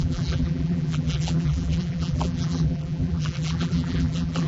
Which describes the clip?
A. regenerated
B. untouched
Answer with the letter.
A